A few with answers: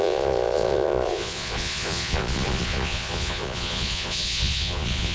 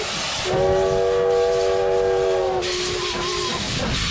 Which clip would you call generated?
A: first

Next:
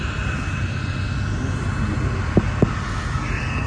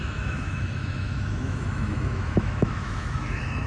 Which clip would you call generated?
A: second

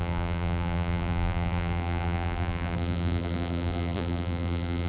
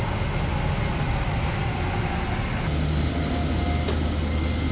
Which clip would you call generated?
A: first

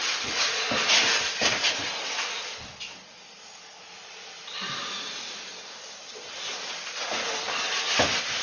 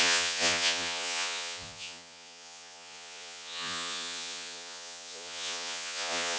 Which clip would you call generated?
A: second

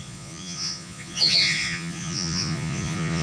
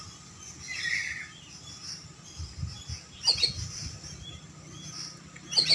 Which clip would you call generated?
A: first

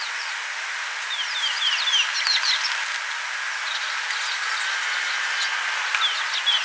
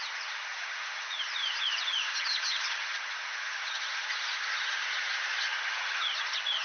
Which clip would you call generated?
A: second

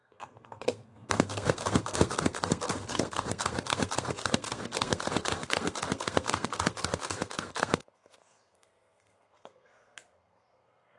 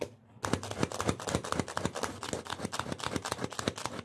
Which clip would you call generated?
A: first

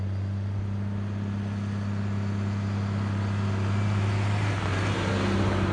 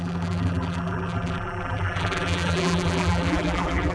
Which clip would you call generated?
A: second